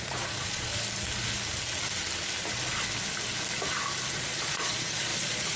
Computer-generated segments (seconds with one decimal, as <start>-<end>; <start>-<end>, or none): 0.0-0.7; 4.1-5.6